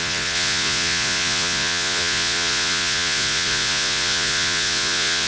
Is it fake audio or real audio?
fake